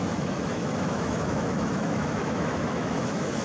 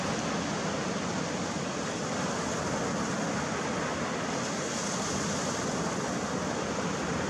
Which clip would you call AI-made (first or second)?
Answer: first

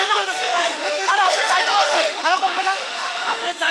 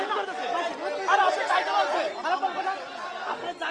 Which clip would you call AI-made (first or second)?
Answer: first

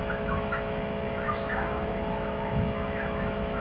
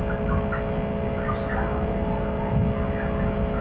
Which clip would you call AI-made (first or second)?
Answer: first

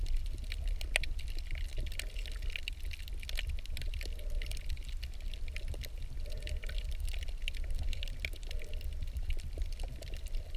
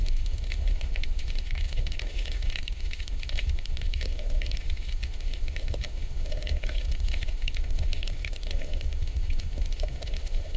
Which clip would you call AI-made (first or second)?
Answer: second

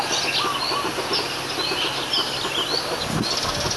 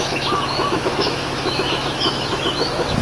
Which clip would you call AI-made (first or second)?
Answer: second